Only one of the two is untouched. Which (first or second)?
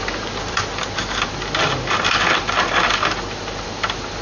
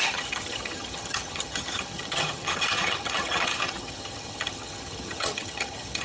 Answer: first